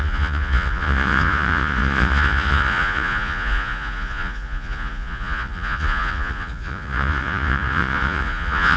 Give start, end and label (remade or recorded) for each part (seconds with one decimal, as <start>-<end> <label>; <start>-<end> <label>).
0.0-8.8 remade